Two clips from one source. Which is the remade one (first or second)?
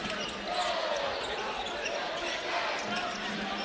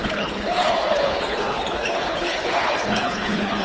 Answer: second